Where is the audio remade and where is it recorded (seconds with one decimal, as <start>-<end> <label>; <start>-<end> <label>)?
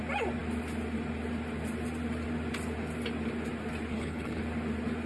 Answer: 0.0-3.9 recorded; 3.9-4.4 remade; 4.4-5.1 recorded